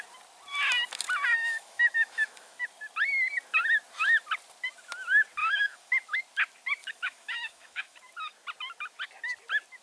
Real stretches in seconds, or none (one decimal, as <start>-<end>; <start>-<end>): 0.0-1.3; 2.7-5.4; 6.2-6.8; 8.0-9.8